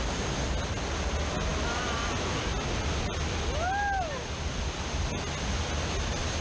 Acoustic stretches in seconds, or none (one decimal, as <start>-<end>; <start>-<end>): 0.0-6.4